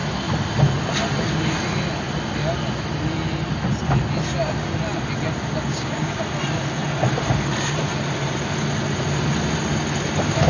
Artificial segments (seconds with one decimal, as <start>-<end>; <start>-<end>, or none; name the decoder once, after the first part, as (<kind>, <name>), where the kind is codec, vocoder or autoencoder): 5.7-6.2 (codec, DAC)

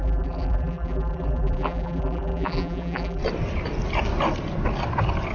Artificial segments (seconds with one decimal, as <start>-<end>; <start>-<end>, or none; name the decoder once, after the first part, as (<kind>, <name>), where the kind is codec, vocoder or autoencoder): 0.0-3.2 (vocoder, BigVGAN v2)